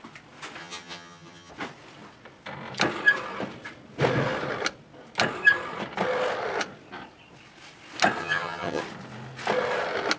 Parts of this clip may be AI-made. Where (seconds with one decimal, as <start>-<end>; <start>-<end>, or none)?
0.6-1.5; 8.2-8.8